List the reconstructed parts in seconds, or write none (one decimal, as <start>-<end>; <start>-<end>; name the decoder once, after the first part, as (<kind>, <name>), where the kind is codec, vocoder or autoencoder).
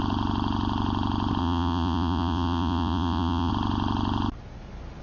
1.4-3.5 (vocoder, Vocos)